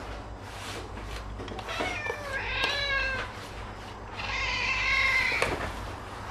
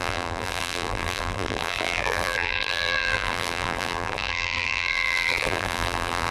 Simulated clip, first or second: second